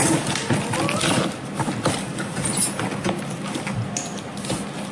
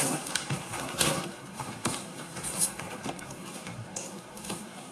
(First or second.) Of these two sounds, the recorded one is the first